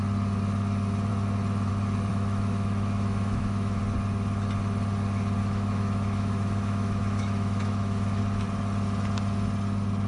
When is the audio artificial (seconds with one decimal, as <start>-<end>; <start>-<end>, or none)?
2.1-3.8; 5.4-8.2